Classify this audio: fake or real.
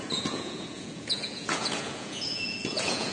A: fake